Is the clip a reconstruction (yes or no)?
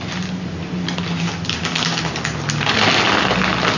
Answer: no